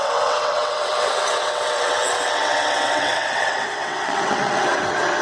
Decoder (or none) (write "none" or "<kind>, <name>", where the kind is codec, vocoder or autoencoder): vocoder, WaveNeXt